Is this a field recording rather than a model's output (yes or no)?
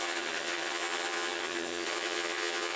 no